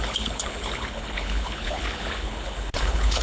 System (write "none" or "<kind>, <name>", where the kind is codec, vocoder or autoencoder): codec, HILCodec